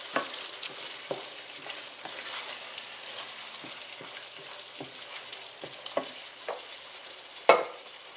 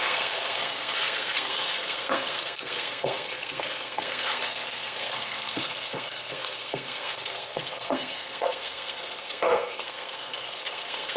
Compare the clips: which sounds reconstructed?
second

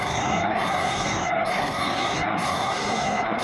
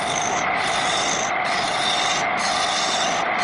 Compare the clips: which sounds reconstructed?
first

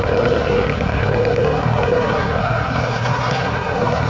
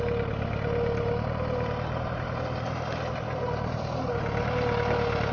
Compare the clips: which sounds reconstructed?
first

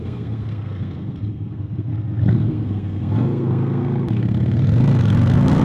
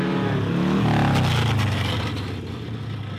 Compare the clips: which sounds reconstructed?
first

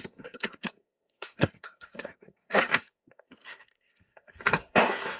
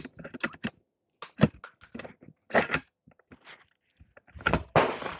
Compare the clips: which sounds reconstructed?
first